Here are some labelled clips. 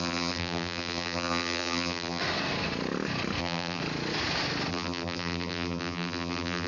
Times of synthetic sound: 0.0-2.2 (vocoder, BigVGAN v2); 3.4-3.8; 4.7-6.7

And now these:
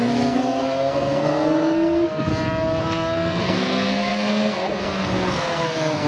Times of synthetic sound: 0.0-2.3 (codec, SNAC); 2.8-6.1

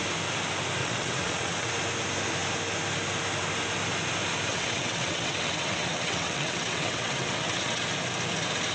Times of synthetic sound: 0.8-1.7 (vocoder, WaveNeXt); 4.5-7.8

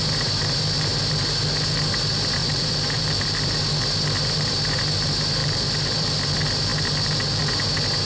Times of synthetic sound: 2.4-3.6 (vocoder, BigVGAN v2); 5.4-6.3; 6.7-7.4

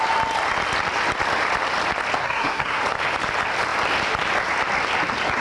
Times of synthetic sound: 2.2-2.8 (codec, SNAC)

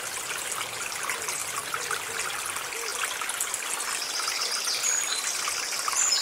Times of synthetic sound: none

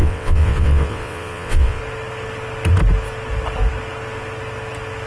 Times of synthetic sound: 0.0-1.8 (vocoder, WaveNeXt)